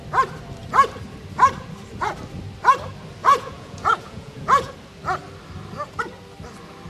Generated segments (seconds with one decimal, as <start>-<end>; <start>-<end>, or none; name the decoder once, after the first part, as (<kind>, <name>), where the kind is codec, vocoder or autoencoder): 3.2-4.7 (vocoder, Vocos)